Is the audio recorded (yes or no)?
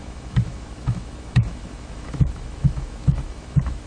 no